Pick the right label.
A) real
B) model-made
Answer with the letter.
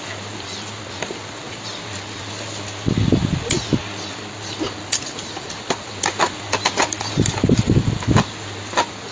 A